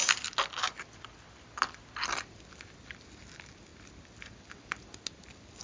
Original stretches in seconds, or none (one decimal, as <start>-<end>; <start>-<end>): 0.0-5.6